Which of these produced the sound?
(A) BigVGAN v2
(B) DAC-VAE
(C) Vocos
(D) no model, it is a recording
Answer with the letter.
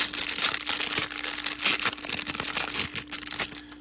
D